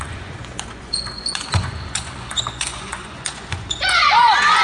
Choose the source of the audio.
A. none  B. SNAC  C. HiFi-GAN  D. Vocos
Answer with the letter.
D